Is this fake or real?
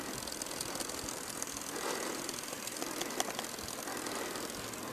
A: real